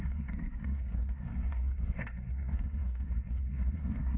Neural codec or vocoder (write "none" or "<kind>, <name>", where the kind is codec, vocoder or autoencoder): codec, SNAC